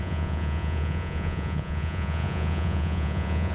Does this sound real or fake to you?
fake